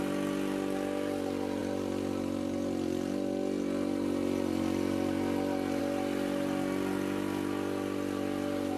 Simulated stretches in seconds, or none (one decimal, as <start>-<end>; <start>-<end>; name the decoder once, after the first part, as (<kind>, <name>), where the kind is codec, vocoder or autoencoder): none